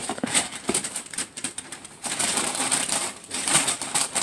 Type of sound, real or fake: fake